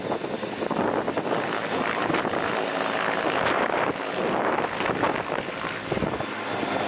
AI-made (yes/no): no